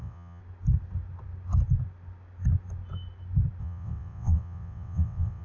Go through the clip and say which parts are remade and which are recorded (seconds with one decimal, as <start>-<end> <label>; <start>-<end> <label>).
0.0-0.4 remade; 0.4-3.6 recorded; 3.6-5.4 remade